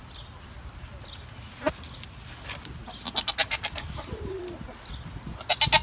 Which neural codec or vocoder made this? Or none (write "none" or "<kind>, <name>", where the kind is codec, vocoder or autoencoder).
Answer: none